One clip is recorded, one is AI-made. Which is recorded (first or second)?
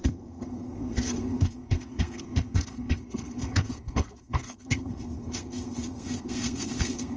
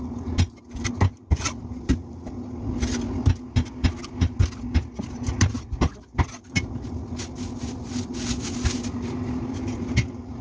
second